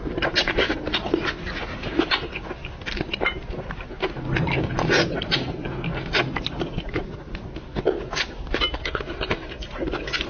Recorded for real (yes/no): yes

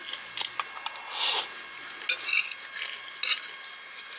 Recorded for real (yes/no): yes